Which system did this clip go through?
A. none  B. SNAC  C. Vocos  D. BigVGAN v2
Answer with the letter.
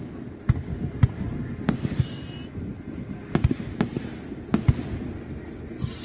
A